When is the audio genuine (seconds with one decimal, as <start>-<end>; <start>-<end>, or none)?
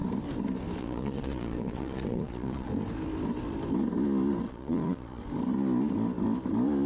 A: 0.0-0.8; 2.7-4.4; 5.2-6.9